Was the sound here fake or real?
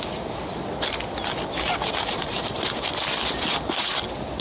real